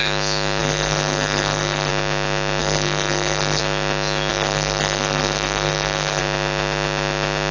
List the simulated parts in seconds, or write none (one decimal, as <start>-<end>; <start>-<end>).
0.6-1.9; 2.6-3.6; 4.3-6.2